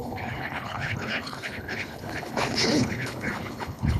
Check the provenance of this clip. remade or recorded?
remade